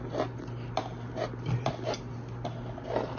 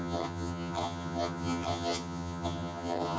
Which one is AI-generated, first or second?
second